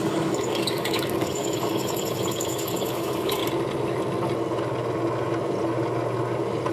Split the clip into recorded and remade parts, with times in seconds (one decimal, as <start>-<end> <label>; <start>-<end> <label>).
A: 0.0-3.4 remade; 3.4-6.7 recorded